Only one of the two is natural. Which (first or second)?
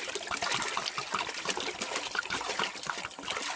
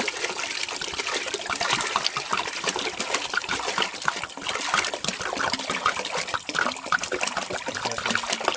first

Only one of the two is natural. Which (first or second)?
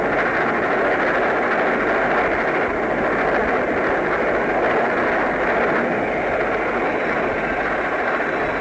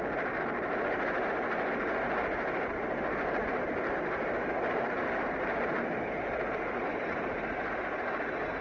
first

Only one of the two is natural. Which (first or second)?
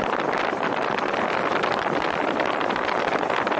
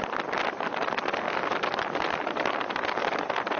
second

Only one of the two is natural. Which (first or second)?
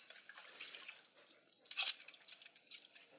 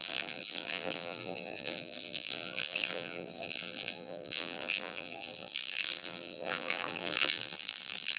first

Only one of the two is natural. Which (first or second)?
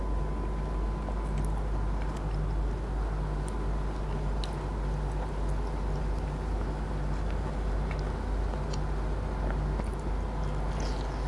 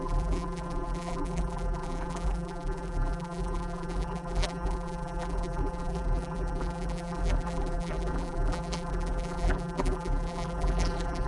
first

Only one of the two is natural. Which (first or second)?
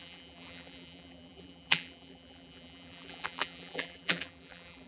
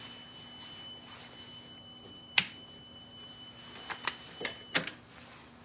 second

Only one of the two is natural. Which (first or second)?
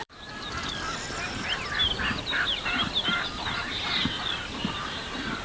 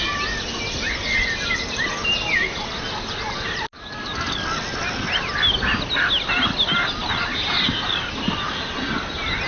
second